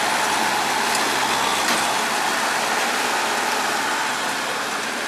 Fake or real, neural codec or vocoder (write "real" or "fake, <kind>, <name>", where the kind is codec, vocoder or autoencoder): real